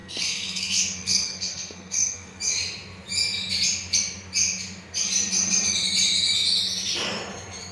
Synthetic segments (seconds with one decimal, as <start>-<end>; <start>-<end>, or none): 0.0-2.4